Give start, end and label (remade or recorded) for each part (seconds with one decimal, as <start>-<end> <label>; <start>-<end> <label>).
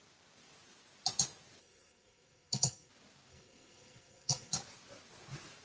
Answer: 0.0-1.6 recorded; 1.6-2.9 remade; 2.9-3.3 recorded; 3.3-4.5 remade; 4.5-5.6 recorded